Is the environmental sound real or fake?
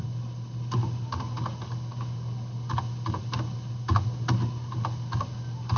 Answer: real